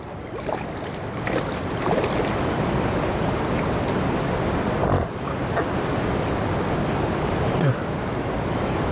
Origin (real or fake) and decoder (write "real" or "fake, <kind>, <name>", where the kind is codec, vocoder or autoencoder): real